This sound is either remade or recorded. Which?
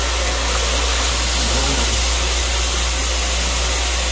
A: recorded